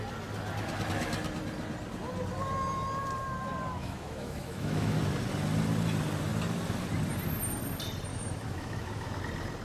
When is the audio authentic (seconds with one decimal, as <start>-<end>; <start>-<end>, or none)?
0.0-3.8; 5.0-8.1; 9.2-9.6